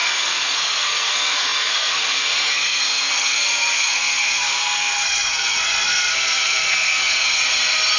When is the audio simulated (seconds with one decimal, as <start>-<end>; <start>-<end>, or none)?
0.0-7.4